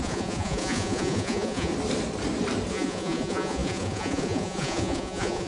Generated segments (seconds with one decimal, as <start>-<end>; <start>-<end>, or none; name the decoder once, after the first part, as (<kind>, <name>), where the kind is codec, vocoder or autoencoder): 0.0-1.7 (vocoder, Vocos); 2.7-5.5